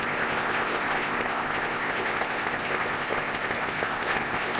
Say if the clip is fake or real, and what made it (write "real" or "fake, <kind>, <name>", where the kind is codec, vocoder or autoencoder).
fake, codec, ZipCodec